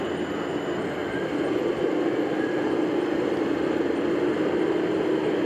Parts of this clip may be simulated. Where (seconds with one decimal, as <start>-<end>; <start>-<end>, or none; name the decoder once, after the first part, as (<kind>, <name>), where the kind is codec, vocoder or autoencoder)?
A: none